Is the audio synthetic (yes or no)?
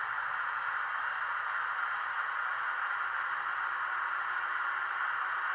no